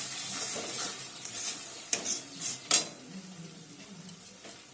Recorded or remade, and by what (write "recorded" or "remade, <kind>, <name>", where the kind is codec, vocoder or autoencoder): recorded